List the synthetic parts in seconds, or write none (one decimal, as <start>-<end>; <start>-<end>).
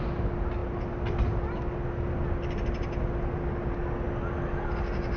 none